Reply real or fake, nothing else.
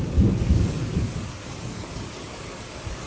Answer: fake